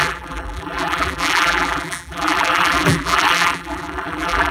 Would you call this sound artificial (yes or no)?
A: yes